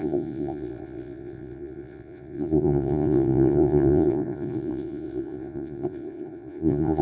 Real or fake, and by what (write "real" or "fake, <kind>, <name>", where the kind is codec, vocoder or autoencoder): fake, vocoder, Vocos